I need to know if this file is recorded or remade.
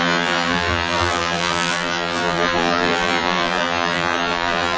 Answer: remade